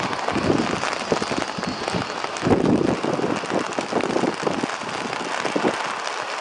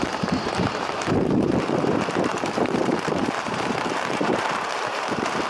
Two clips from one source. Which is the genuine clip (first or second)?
first